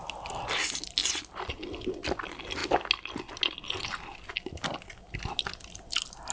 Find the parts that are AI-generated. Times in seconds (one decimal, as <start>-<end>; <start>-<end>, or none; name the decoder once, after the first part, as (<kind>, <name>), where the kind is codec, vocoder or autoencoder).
none